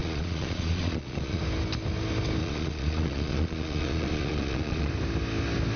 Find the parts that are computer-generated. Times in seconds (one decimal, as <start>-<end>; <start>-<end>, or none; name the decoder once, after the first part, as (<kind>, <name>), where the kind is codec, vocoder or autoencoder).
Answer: 0.0-1.4 (vocoder, Vocos); 2.4-4.9